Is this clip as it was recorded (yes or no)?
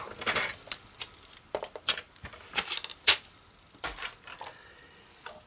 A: yes